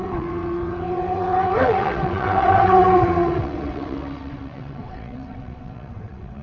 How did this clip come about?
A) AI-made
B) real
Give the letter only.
A